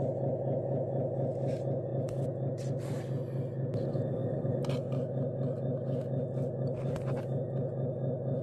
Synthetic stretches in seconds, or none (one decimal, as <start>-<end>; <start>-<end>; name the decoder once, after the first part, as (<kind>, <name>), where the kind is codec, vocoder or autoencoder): none